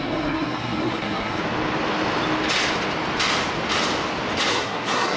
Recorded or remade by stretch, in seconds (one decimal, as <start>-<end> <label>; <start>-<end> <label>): 0.0-1.4 remade; 1.4-4.5 recorded; 4.5-5.2 remade